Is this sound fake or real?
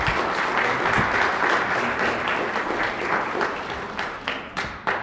real